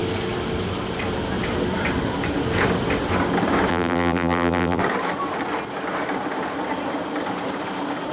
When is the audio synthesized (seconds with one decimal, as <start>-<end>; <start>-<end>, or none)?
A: 3.7-4.8